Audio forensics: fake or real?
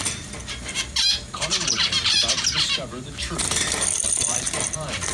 fake